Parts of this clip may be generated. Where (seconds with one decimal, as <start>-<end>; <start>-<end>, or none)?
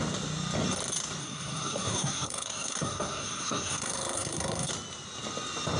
1.2-4.7